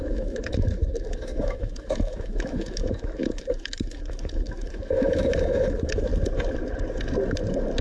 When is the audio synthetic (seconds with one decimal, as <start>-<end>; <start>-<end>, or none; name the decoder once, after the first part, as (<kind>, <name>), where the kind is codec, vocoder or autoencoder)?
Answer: 0.0-6.1 (autoencoder, DAC-VAE)